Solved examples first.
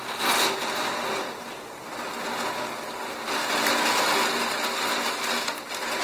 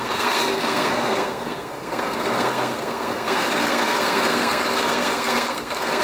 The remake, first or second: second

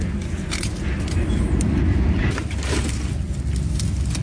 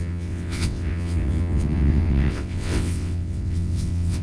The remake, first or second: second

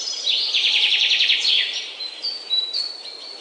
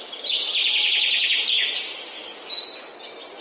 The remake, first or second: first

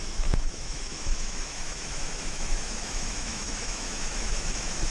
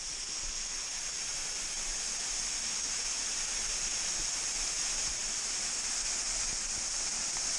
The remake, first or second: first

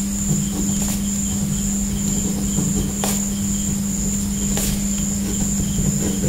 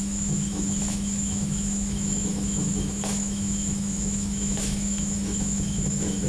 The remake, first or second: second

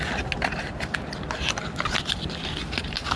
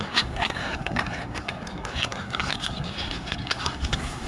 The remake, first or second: second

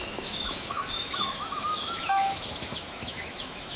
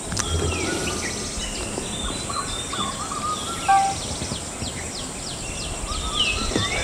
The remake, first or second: first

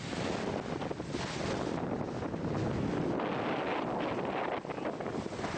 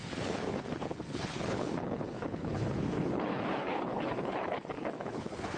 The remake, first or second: second